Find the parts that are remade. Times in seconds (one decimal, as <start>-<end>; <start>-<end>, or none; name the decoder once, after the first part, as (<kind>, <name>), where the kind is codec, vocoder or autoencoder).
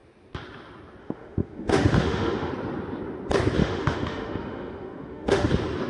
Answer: 1.0-2.5 (autoencoder, DAC-VAE); 3.6-5.5